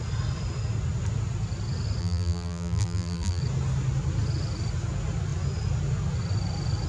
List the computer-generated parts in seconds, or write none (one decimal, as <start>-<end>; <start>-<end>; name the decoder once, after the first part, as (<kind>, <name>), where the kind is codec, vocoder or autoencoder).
2.0-3.4 (vocoder, BigVGAN v2)